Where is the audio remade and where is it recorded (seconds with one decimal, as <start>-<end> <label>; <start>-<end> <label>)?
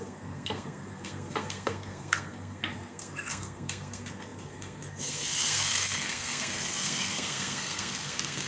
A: 0.0-8.5 remade